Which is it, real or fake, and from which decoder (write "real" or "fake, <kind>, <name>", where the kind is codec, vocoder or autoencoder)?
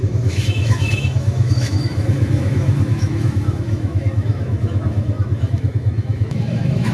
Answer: fake, autoencoder, DAC-VAE